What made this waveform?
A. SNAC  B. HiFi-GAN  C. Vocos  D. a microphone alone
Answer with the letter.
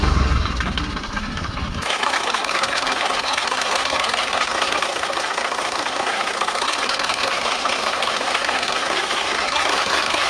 A